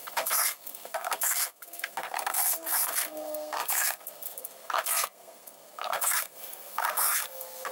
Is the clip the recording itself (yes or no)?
no